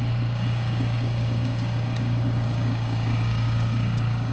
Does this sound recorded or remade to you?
remade